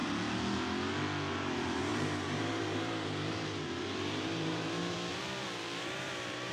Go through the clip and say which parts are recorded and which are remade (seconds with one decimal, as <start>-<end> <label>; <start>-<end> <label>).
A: 0.0-1.3 recorded; 1.3-6.5 remade